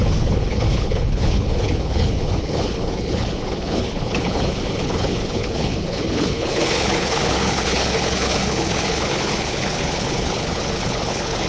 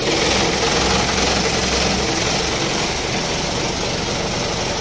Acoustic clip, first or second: second